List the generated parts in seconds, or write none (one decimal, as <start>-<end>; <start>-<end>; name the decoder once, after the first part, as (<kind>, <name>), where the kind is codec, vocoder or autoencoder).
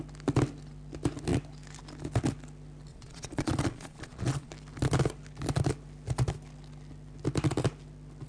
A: 2.9-4.5 (vocoder, Vocos)